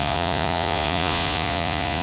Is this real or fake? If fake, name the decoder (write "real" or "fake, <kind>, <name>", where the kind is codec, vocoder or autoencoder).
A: fake, vocoder, Vocos